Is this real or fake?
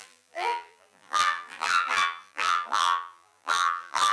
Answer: fake